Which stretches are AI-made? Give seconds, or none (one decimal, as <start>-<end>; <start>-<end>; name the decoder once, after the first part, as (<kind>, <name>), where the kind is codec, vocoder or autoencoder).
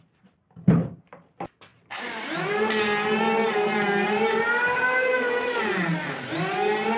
5.1-5.6 (autoencoder, DAC-VAE)